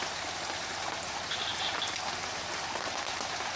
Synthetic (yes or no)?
no